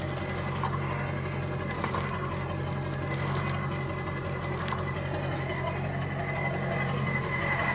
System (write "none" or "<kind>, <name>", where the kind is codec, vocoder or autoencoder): none